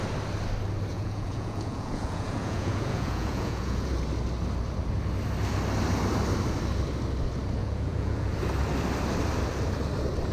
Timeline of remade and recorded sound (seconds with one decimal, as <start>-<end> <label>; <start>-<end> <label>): 0.0-0.9 recorded; 0.9-3.9 remade; 3.9-7.6 recorded; 7.6-8.3 remade; 8.3-10.3 recorded